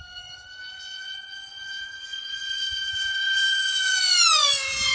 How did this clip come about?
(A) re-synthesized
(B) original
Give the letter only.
A